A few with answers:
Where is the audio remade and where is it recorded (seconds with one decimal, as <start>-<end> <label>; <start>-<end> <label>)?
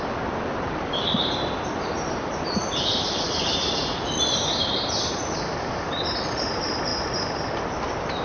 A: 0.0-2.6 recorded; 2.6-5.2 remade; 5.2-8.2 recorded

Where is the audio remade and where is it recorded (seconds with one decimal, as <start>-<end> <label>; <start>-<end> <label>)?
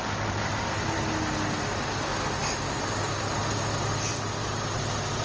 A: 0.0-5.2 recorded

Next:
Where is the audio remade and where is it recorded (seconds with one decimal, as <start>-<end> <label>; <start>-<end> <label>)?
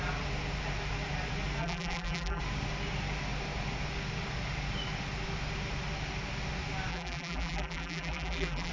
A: 0.0-1.6 recorded; 1.6-2.4 remade; 2.4-6.9 recorded; 6.9-8.7 remade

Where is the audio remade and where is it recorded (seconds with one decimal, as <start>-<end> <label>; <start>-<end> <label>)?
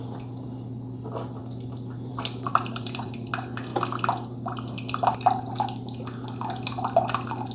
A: 0.0-2.5 recorded; 2.5-3.3 remade; 3.3-7.5 recorded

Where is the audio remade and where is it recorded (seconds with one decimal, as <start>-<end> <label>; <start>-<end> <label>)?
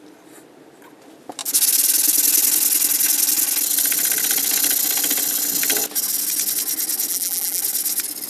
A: 0.0-7.1 recorded; 7.1-7.6 remade; 7.6-8.3 recorded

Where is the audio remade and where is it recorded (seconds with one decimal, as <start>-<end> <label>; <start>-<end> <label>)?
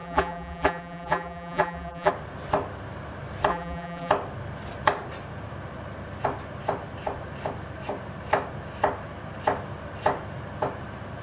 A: 0.0-2.1 remade; 2.1-3.5 recorded; 3.5-4.1 remade; 4.1-11.2 recorded